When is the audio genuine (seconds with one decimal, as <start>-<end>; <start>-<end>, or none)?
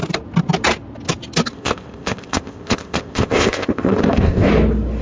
0.0-1.5; 4.5-5.0